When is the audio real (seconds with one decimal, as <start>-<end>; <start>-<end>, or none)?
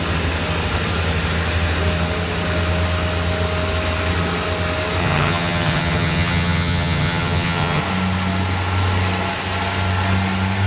0.0-5.0; 7.8-10.7